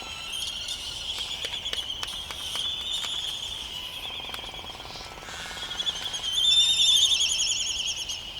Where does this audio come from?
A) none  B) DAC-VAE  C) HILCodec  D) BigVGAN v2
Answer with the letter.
A